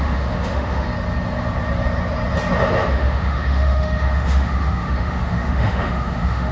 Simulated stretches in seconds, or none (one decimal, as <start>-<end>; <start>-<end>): 0.0-0.9; 2.9-6.5